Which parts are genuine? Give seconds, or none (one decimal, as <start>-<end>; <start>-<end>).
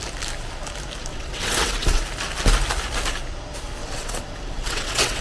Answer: 0.0-1.1; 2.0-3.8